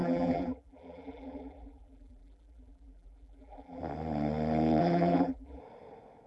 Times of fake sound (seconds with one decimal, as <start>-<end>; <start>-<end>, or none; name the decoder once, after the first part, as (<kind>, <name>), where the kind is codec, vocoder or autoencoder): 0.0-3.8 (vocoder, BigVGAN v2); 4.8-5.6